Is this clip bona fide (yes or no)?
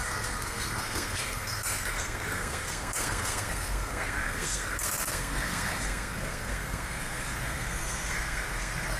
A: no